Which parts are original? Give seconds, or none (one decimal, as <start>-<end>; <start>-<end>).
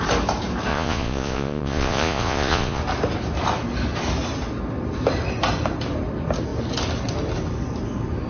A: 0.0-0.7; 2.8-8.3